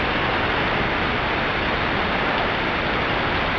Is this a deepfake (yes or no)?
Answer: no